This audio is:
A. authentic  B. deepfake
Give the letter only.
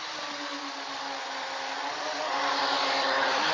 A